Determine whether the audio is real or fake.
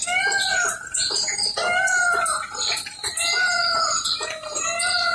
real